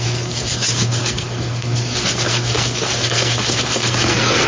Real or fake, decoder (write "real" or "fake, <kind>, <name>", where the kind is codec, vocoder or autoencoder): fake, codec, SNAC